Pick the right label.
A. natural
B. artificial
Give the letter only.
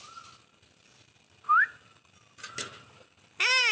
A